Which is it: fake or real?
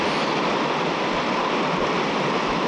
real